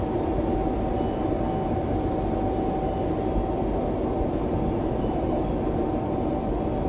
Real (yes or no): yes